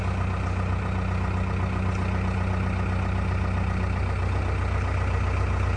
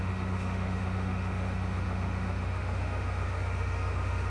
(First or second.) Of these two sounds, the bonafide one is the first